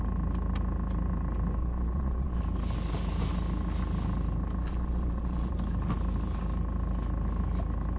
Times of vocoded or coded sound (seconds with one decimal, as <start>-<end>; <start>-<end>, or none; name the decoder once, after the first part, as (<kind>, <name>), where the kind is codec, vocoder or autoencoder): 1.6-2.4 (vocoder, Vocos); 4.6-5.5